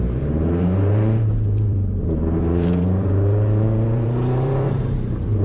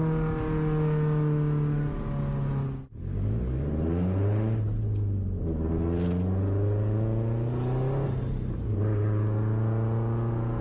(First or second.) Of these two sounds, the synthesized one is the first